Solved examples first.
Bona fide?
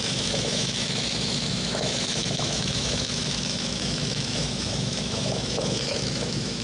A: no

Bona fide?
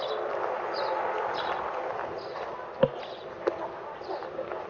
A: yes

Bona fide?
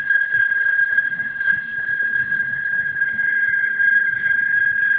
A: no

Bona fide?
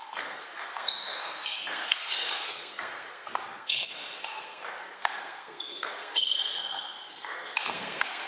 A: no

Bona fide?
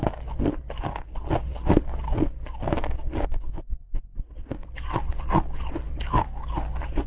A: yes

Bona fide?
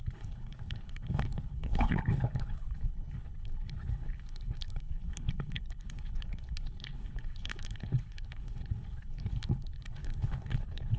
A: no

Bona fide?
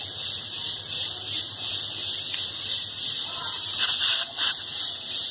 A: no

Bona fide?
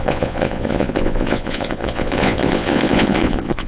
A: no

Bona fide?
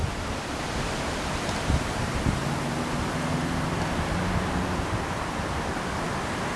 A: yes